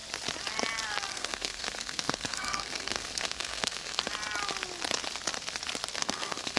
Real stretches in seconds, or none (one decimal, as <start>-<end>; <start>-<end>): 0.0-1.1; 4.0-6.0